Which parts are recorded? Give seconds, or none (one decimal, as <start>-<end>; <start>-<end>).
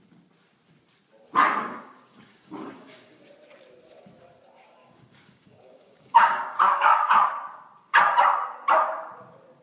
0.0-1.6; 3.3-4.8; 7.3-9.6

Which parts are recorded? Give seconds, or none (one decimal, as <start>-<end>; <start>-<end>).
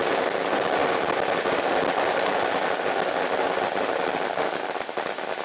0.0-5.4